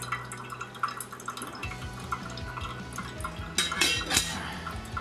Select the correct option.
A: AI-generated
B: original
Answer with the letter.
B